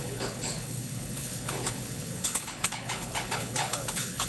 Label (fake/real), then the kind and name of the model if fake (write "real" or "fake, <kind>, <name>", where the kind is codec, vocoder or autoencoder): fake, codec, HILCodec